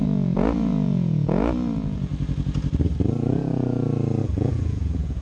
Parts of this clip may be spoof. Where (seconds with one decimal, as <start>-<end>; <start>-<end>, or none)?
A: 0.0-2.1; 4.2-5.2